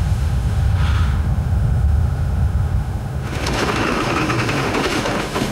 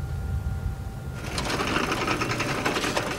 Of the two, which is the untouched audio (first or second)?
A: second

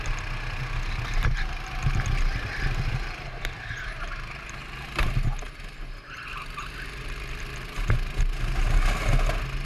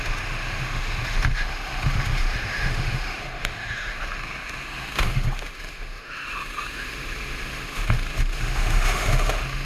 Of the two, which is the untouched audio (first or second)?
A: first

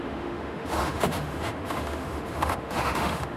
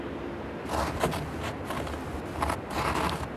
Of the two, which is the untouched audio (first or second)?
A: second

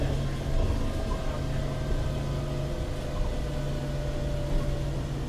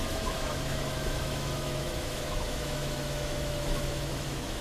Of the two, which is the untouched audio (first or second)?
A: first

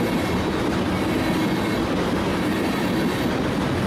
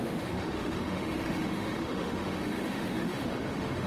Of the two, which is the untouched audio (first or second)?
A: first